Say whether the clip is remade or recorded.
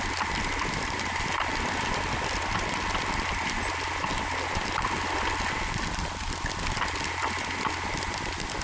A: recorded